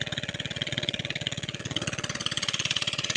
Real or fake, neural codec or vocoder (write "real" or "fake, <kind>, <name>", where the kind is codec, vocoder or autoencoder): fake, vocoder, Vocos